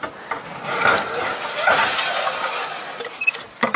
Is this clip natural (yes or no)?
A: yes